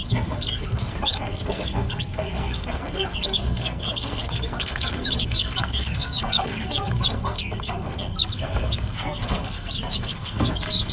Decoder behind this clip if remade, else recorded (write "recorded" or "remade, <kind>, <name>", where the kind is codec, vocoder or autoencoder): remade, codec, SNAC